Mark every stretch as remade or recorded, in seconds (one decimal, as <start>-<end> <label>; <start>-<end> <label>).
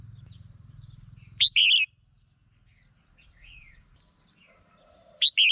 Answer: 0.0-5.5 recorded